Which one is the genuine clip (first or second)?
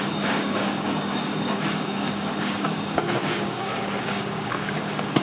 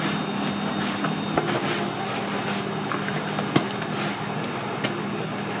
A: second